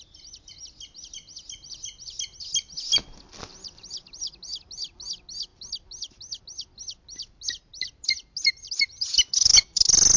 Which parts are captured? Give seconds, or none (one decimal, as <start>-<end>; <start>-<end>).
0.0-10.2